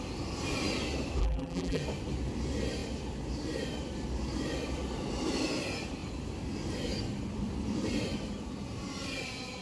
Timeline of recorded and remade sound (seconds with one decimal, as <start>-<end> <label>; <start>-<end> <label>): 0.0-1.2 recorded; 1.2-1.8 remade; 1.8-9.6 recorded